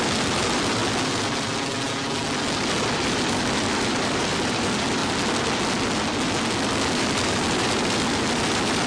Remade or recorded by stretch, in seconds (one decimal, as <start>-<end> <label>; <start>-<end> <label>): 0.0-0.8 remade; 0.8-3.1 recorded; 3.1-5.0 remade; 5.0-6.9 recorded; 6.9-8.9 remade